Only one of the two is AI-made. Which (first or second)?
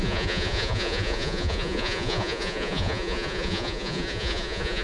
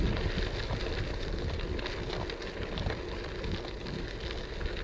first